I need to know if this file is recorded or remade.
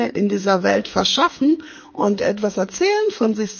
remade